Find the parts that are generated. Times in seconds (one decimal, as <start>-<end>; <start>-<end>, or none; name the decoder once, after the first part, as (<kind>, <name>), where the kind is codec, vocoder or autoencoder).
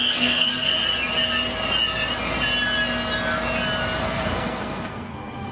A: 0.0-0.7 (codec, SNAC); 4.0-5.5